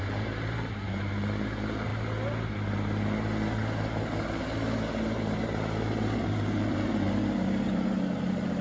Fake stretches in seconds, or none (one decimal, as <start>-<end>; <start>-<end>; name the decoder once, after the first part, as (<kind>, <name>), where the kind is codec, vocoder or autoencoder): 0.0-1.9 (vocoder, BigVGAN v2); 6.3-8.6